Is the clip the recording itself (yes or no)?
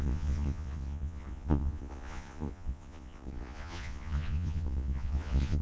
no